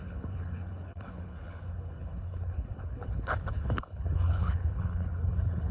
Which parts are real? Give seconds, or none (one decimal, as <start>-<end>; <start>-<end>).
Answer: none